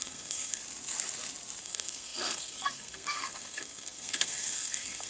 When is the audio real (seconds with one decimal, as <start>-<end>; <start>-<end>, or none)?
0.6-1.6